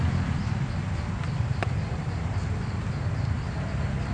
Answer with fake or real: real